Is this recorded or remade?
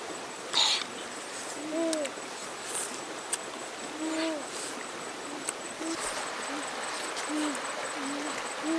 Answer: recorded